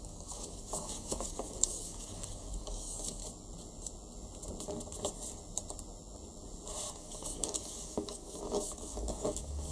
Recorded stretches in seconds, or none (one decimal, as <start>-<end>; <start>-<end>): 3.2-6.9

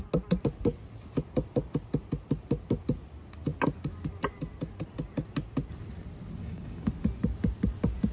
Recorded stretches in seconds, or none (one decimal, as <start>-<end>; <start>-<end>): 0.0-6.4; 6.9-8.1

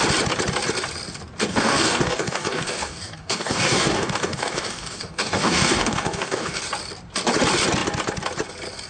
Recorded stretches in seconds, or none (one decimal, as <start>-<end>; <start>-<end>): 0.0-1.4; 6.6-8.9

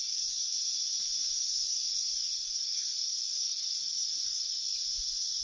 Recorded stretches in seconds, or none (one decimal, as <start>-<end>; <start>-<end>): 0.5-1.4; 4.8-5.4

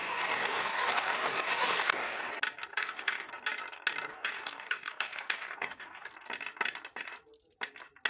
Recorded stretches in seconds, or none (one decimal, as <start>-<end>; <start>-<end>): 2.3-2.7; 3.3-4.1; 6.1-8.1